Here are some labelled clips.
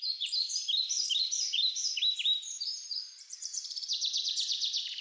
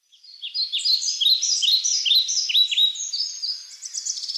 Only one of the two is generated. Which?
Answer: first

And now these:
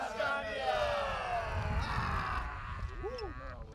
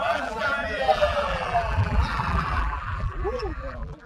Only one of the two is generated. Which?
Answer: second